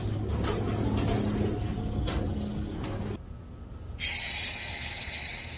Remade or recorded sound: recorded